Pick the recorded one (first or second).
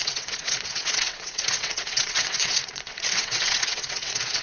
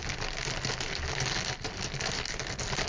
second